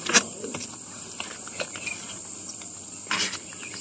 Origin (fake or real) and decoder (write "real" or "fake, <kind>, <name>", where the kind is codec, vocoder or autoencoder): real